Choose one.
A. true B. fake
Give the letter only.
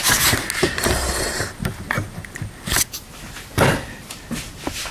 A